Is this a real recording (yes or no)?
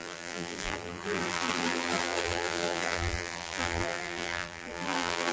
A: no